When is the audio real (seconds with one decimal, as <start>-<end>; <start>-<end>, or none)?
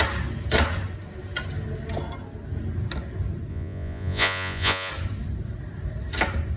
0.0-3.5; 4.9-6.6